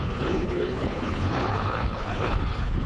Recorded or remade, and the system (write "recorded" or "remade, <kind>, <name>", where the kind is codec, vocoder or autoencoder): remade, codec, HILCodec